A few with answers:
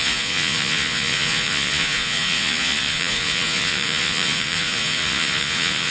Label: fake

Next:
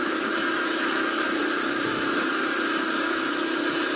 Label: fake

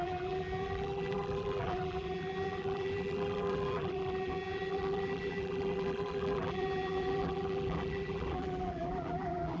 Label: fake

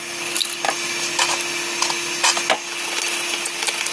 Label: real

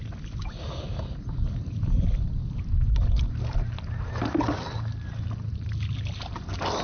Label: real